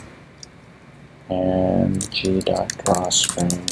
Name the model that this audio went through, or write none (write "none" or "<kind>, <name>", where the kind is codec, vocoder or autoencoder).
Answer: none